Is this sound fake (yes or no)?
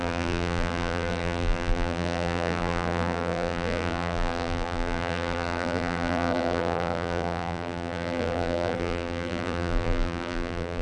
yes